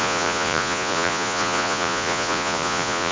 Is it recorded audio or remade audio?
remade